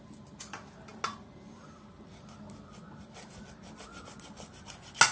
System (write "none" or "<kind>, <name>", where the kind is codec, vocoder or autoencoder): none